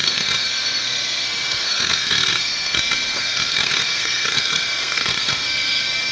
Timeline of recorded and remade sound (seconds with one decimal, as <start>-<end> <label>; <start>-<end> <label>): 0.0-6.1 remade